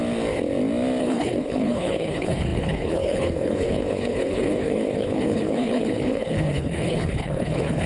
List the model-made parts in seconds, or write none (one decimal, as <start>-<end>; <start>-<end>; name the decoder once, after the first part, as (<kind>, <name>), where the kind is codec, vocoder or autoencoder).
1.0-7.9 (codec, HILCodec)